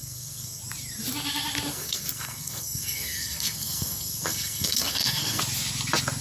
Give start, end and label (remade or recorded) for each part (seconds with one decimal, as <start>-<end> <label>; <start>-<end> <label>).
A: 0.0-0.6 remade; 0.6-1.7 recorded; 1.7-5.4 remade; 5.4-6.2 recorded